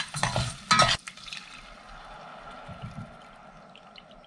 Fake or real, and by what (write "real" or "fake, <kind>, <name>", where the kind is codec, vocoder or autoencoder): real